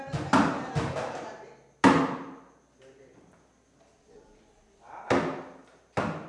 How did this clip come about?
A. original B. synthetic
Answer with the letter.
A